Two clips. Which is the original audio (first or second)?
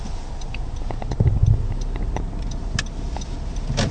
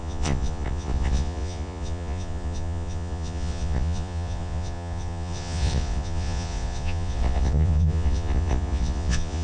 first